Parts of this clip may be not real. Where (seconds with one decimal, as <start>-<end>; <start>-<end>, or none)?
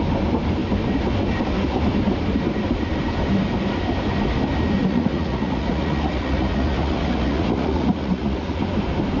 4.8-8.6